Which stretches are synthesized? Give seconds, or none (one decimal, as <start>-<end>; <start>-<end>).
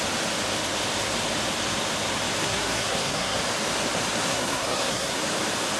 2.4-3.4; 4.3-5.2